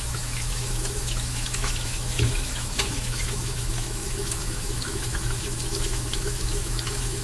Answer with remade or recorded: remade